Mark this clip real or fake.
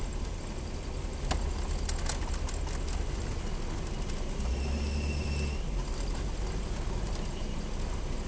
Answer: real